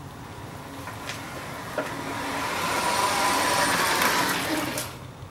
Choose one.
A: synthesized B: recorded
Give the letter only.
B